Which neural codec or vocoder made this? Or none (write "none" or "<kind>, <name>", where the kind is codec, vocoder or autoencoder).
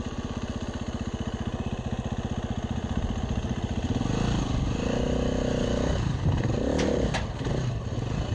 none